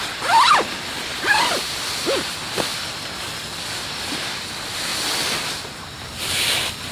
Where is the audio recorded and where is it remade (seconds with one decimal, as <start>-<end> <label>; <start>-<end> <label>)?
0.0-6.9 remade